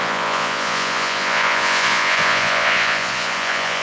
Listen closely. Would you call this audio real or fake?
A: fake